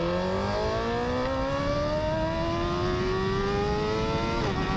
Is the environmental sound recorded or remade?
recorded